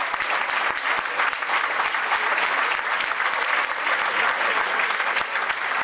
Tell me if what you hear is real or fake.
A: real